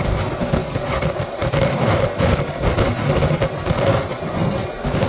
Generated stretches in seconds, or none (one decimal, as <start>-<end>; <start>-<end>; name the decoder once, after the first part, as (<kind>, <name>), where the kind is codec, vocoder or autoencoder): 0.6-2.7 (vocoder, BigVGAN v2)